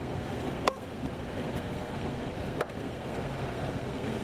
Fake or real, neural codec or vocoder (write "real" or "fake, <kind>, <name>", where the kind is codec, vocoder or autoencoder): fake, codec, SNAC